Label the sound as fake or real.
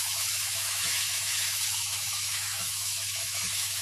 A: fake